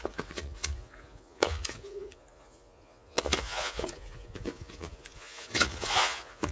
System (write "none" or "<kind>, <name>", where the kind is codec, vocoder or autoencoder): vocoder, Vocos